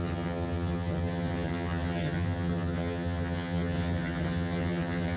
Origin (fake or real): fake